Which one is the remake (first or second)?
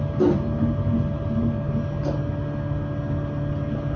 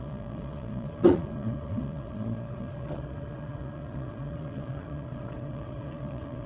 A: second